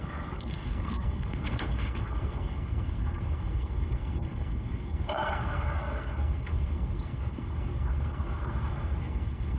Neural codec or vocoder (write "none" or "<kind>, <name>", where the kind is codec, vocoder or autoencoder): codec, SNAC